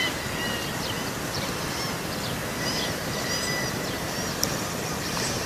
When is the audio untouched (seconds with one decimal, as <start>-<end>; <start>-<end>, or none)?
0.0-2.7; 4.2-5.5